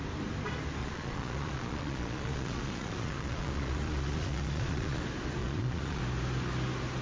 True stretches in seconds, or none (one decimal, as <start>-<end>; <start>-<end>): 0.0-0.8; 5.0-5.4; 6.0-7.0

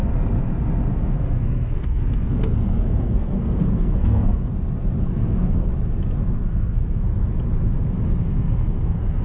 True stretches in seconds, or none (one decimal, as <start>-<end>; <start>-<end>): 0.0-0.9; 4.5-5.0; 5.7-6.3; 7.1-8.2

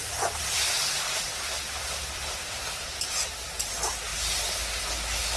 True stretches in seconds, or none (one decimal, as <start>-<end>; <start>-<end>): 1.2-1.8; 3.3-5.4

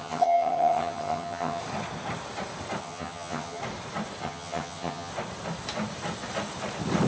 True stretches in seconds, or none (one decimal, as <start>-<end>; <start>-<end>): 1.6-2.8; 3.6-4.2; 5.1-7.1

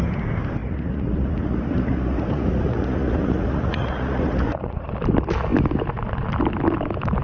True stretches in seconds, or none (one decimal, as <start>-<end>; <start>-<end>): 0.0-0.6; 4.9-7.2

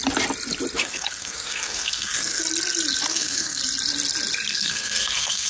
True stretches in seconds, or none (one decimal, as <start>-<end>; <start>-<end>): 0.0-0.8; 2.4-3.1; 3.6-4.5